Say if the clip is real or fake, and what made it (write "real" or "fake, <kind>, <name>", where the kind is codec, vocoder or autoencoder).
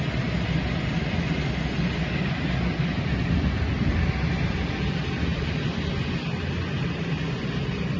real